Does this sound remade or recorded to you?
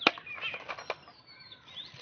recorded